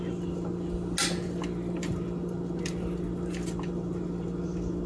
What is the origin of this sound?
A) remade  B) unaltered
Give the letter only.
B